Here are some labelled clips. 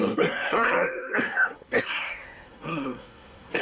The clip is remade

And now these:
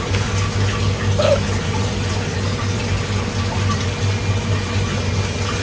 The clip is recorded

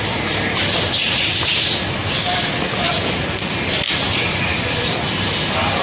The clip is recorded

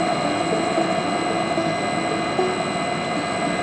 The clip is recorded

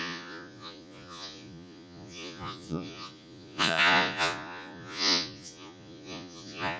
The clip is remade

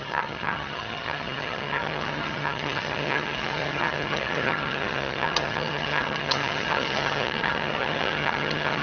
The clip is remade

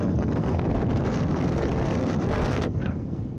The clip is remade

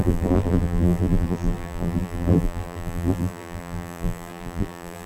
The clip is remade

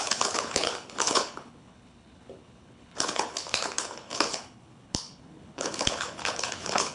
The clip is remade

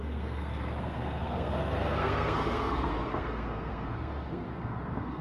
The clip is remade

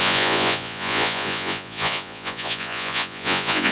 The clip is remade